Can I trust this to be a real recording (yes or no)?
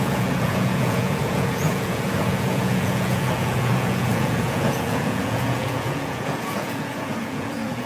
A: no